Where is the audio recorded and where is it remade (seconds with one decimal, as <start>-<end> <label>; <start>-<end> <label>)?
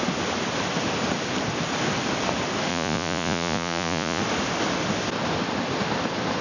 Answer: 0.0-2.7 recorded; 2.7-4.2 remade; 4.2-6.4 recorded